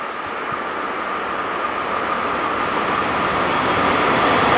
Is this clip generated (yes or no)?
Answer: no